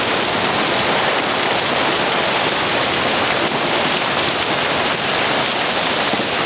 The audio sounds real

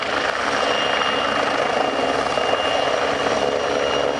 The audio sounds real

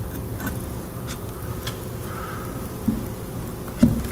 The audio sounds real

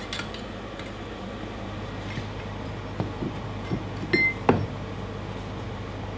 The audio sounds real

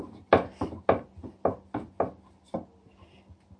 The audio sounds real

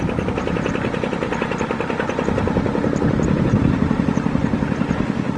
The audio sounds real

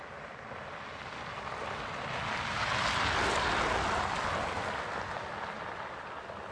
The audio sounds real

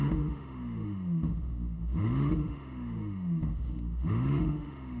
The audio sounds fake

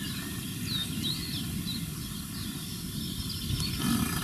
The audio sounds real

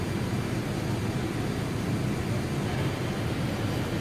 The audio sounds real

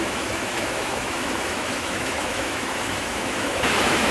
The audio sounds fake